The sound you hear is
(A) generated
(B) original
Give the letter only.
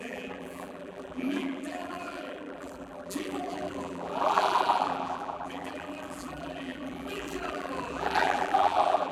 A